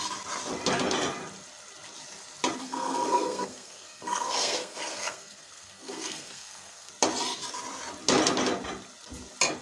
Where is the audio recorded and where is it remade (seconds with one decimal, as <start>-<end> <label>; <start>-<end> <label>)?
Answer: 0.0-2.6 recorded; 2.6-6.9 remade; 6.9-9.6 recorded